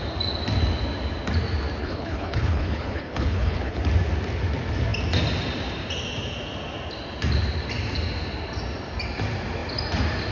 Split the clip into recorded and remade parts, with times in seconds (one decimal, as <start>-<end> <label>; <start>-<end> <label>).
0.0-1.8 recorded; 1.8-3.8 remade; 3.8-10.3 recorded